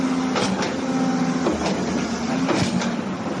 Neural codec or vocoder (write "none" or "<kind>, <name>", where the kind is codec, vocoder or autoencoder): none